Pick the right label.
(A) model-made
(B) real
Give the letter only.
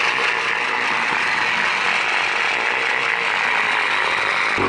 B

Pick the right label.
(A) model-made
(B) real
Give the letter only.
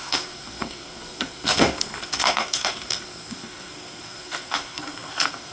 A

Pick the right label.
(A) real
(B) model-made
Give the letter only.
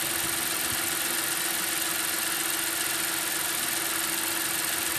A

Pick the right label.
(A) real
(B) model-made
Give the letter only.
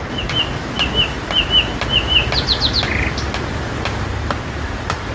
A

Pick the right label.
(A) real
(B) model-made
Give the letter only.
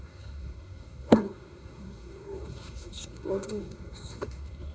B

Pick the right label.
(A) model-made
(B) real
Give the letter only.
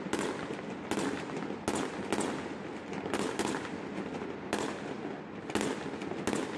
B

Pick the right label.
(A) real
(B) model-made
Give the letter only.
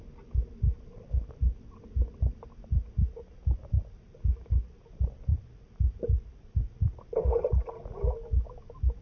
A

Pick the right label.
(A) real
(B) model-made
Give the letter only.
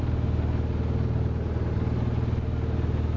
A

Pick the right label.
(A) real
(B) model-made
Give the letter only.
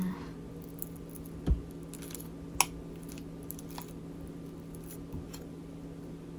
A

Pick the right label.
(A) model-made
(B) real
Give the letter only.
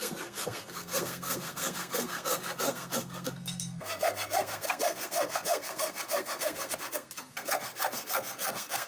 A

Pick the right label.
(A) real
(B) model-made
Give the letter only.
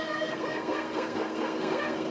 B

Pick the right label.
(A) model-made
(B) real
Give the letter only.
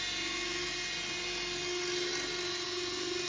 B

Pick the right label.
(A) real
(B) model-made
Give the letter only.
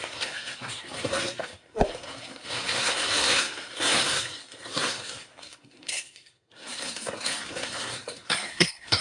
B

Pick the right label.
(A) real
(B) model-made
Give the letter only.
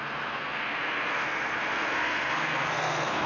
B